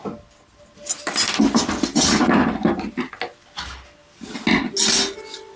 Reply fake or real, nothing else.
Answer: real